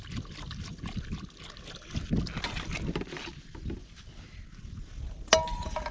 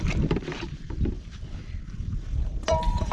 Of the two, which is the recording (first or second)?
first